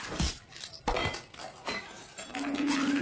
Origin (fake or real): real